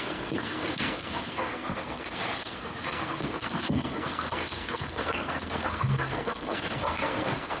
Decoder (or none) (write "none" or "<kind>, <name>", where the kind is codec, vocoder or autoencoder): codec, SNAC